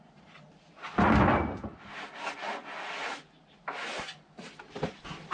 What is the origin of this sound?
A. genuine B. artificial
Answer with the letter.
A